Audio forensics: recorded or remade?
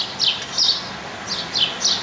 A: recorded